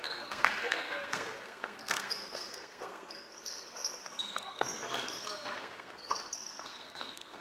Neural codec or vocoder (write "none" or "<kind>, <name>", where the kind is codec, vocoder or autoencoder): codec, SNAC